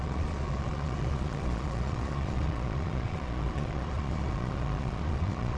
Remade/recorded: remade